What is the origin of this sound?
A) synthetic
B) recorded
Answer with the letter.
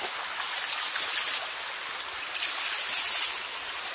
B